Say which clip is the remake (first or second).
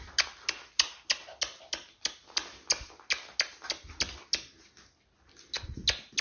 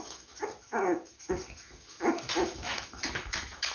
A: second